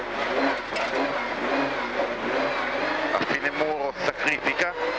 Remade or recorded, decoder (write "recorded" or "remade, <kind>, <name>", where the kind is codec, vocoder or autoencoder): recorded